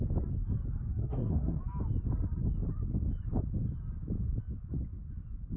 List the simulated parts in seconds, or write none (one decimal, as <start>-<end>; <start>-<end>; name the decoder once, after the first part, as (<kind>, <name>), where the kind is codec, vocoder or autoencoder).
1.0-1.6 (codec, SNAC)